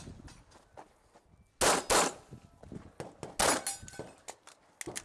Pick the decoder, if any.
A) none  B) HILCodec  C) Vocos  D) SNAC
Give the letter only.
A